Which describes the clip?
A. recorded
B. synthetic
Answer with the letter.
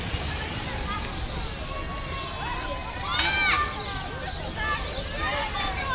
A